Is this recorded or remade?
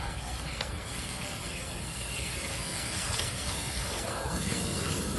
remade